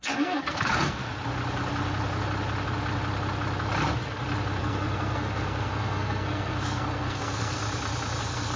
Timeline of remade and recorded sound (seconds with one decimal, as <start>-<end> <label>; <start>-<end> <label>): 0.0-1.0 remade; 1.0-4.6 recorded; 4.6-7.6 remade; 7.6-8.2 recorded; 8.2-8.6 remade